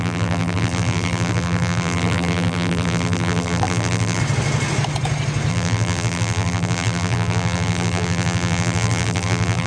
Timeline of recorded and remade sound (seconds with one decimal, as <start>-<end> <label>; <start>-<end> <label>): 0.0-4.2 remade; 4.2-5.5 recorded; 5.5-9.7 remade